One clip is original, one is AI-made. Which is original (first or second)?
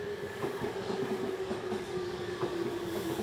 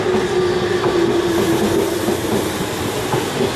second